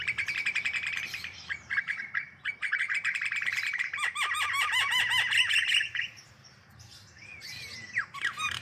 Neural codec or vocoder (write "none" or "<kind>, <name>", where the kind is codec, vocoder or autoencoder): vocoder, BigVGAN v2